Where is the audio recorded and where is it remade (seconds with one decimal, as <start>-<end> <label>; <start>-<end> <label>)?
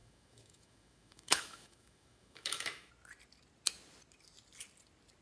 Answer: 0.0-2.9 remade; 2.9-5.2 recorded